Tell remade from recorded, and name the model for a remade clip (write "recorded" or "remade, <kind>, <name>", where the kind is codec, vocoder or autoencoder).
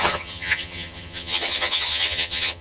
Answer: remade, vocoder, HiFi-GAN